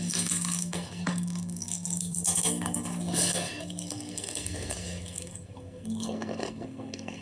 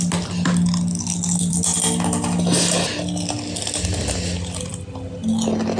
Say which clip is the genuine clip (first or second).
second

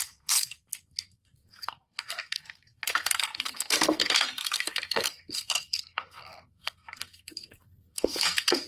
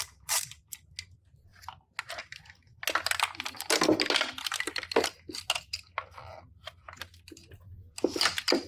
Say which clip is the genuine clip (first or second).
second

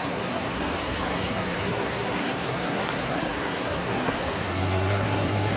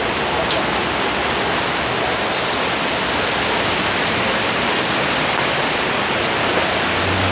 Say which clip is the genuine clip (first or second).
second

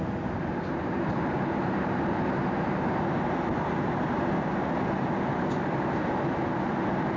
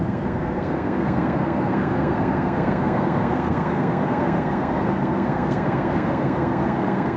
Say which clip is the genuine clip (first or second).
first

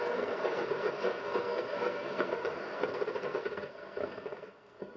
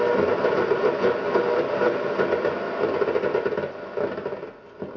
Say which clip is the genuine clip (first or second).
second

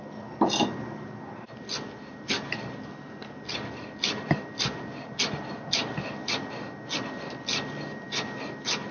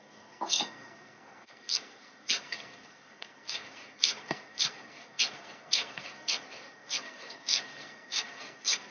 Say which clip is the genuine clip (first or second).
first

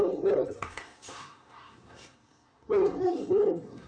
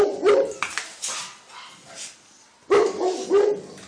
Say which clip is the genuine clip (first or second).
second